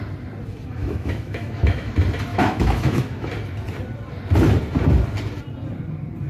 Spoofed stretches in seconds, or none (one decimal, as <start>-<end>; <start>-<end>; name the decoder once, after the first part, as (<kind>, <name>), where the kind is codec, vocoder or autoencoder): 0.8-1.9 (autoencoder, DAC-VAE); 2.3-3.3

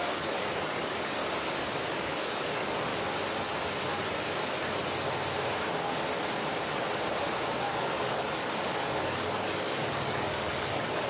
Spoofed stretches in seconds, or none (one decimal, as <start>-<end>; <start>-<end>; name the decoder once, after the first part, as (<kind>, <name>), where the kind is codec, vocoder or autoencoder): 0.0-1.2 (codec, DAC); 1.9-2.9; 7.7-11.1

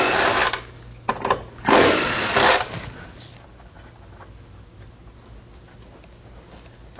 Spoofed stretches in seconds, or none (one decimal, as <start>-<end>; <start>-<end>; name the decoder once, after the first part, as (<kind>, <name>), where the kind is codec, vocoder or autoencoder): none

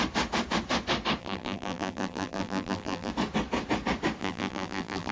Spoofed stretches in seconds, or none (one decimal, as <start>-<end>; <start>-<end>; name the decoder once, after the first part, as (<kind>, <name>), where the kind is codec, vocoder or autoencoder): 1.2-3.1 (vocoder, BigVGAN v2); 4.2-5.1

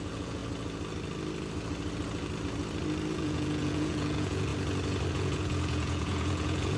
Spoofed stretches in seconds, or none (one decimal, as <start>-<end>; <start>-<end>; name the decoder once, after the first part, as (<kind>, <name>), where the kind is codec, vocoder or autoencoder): 0.0-0.4 (vocoder, Vocos); 3.1-4.5; 5.1-6.8